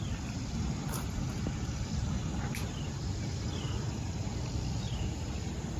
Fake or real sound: real